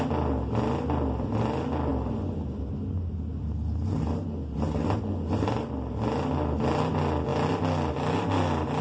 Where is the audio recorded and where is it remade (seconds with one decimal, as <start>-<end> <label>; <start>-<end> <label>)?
0.0-8.8 recorded